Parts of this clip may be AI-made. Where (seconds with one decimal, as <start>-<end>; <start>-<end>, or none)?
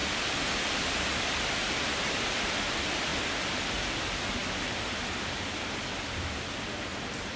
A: 0.0-1.8; 3.1-4.0